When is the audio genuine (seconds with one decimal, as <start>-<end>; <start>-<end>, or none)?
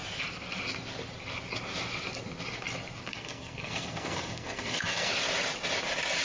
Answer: 0.0-3.1; 5.1-6.2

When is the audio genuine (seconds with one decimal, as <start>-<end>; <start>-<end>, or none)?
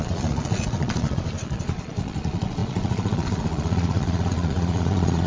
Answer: none